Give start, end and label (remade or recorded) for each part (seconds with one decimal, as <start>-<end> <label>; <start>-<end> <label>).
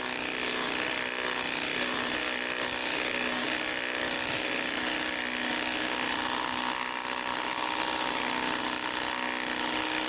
0.0-10.1 recorded